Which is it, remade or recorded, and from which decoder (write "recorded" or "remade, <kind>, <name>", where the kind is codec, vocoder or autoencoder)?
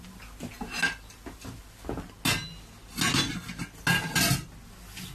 recorded